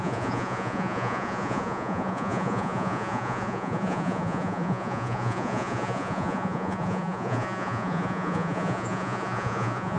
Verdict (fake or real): fake